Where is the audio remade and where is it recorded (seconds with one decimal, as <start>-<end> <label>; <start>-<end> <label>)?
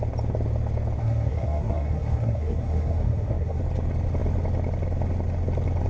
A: 0.0-1.0 recorded; 1.0-3.6 remade; 3.6-5.9 recorded